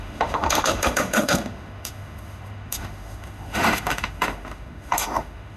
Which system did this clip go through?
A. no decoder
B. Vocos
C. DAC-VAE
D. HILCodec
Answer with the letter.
C